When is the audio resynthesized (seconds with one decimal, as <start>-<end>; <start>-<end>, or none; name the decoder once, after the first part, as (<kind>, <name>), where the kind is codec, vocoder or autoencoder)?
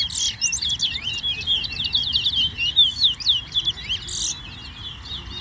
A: none